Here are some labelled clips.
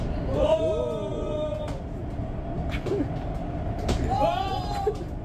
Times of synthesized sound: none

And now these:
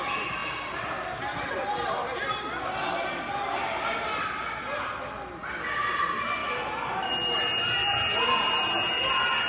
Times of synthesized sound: none

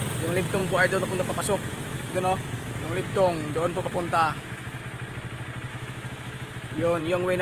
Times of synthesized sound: 0.6-4.8 (autoencoder, DAC-VAE); 5.7-7.0

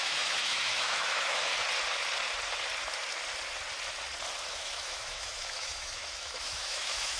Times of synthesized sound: 0.0-1.5 (autoencoder, DAC-VAE); 4.5-7.2

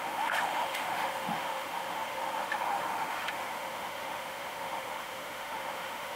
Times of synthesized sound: 0.0-6.2 (autoencoder, DAC-VAE)

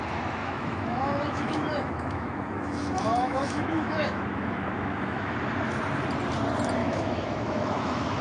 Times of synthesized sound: 0.4-5.3 (autoencoder, DAC-VAE); 6.8-8.2

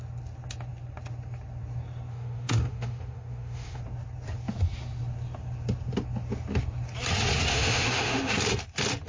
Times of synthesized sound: 2.1-3.8 (autoencoder, DAC-VAE); 7.5-8.3